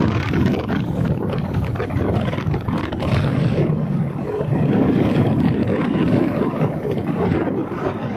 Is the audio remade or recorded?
remade